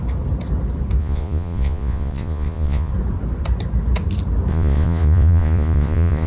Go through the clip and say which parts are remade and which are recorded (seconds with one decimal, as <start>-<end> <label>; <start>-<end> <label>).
0.0-1.0 recorded; 1.0-2.9 remade; 2.9-4.5 recorded; 4.5-6.3 remade